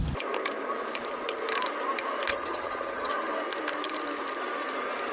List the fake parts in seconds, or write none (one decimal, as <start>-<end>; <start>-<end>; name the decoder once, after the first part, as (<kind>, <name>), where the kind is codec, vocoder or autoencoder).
2.3-3.1 (vocoder, HiFi-GAN)